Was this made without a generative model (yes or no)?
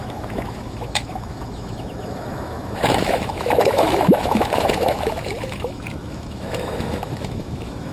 no